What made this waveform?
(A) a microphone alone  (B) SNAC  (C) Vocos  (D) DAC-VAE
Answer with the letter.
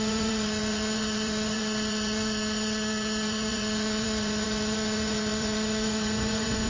C